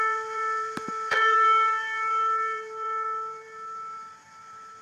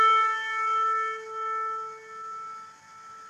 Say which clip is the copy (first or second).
first